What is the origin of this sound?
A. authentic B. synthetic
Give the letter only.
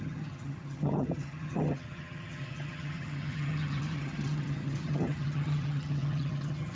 B